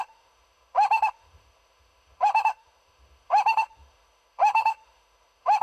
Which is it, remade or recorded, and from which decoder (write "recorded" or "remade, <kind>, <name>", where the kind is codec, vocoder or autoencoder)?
remade, autoencoder, DAC-VAE